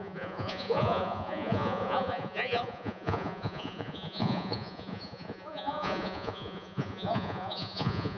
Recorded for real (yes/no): no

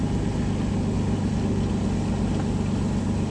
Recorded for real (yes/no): yes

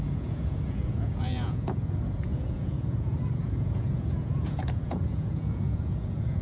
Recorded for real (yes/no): no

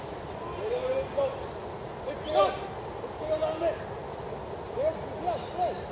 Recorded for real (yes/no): yes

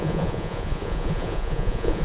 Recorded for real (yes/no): no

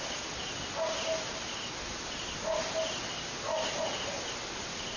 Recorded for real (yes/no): yes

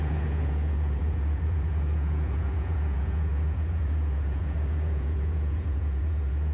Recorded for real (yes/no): no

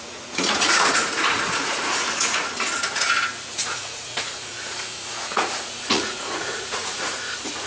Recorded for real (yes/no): no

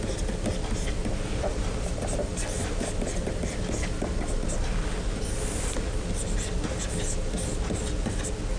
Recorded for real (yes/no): yes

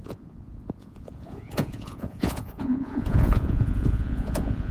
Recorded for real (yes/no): no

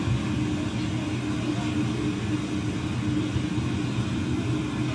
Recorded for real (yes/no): yes